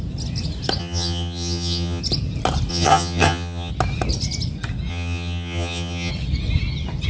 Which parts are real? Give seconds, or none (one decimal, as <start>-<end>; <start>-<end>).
0.0-0.8; 2.0-2.7; 3.7-4.9; 6.1-7.1